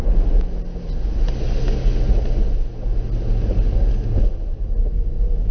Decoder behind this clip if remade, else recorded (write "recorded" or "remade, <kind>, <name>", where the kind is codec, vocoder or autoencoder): recorded